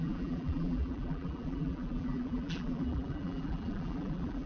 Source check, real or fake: fake